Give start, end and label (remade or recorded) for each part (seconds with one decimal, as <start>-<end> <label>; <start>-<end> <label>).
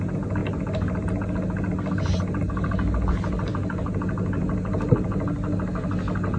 0.0-6.4 recorded